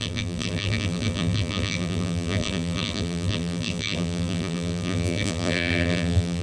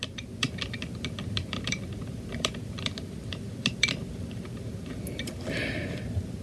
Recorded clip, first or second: second